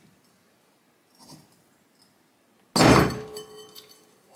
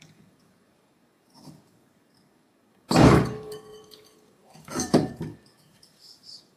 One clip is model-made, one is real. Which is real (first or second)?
first